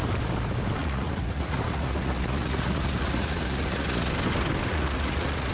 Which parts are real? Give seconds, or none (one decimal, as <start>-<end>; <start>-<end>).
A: 0.0-0.8; 4.1-4.7